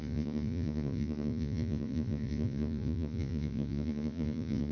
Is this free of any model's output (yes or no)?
no